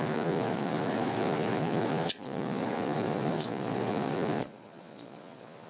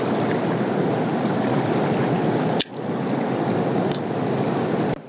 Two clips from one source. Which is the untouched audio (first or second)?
second